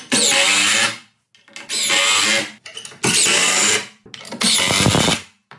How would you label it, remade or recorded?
recorded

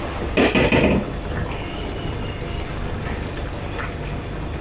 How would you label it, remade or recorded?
recorded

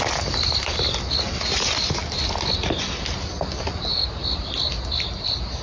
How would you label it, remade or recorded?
recorded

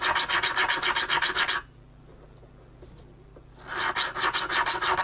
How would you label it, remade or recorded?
recorded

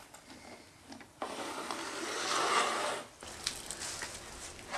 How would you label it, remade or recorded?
recorded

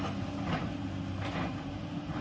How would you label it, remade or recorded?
recorded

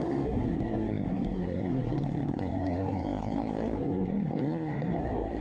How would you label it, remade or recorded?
remade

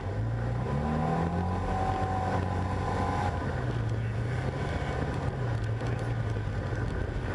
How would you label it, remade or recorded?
recorded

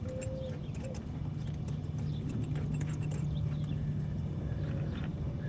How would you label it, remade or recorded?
recorded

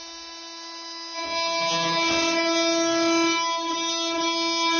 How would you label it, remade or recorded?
recorded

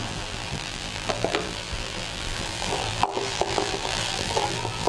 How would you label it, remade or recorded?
remade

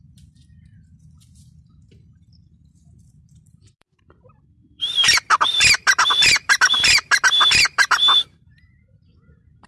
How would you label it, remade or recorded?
remade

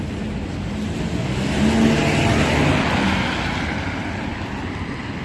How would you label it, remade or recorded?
recorded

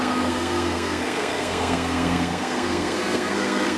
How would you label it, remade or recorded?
remade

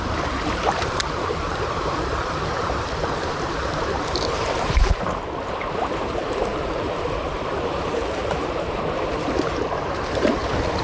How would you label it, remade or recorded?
remade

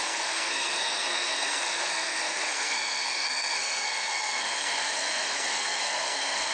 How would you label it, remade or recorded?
remade